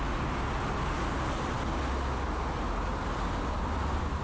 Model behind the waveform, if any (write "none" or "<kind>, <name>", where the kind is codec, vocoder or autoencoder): none